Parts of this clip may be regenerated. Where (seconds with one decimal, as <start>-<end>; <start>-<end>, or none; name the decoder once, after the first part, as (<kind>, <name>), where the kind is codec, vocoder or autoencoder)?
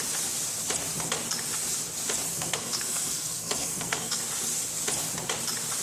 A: 2.3-4.2 (codec, SNAC)